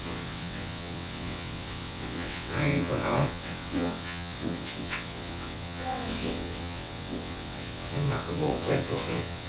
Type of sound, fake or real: fake